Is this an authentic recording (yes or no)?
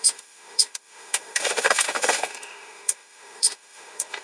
no